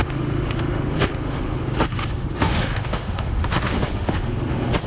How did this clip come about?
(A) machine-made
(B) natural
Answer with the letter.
A